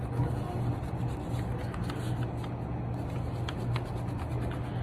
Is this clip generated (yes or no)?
no